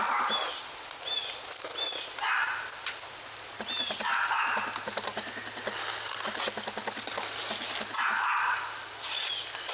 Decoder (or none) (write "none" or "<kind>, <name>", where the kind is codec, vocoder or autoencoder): none